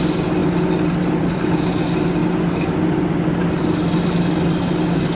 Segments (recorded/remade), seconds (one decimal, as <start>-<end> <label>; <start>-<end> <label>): 0.0-5.1 recorded